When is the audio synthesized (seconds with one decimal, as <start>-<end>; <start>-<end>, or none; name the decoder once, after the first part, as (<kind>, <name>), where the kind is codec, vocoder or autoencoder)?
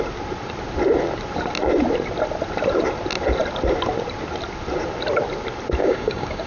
5.8-6.5 (codec, DAC)